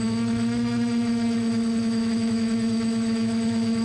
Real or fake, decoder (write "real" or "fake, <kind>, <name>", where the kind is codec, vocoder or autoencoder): fake, autoencoder, DAC-VAE